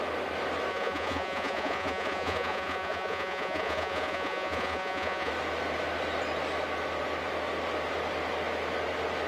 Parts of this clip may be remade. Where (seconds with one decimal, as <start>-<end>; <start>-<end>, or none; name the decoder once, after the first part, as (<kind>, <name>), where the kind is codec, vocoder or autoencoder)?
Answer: 0.7-5.3 (vocoder, Vocos)